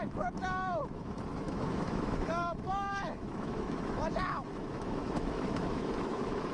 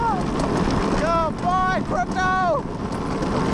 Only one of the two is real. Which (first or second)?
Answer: second